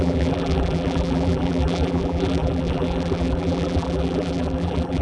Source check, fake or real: fake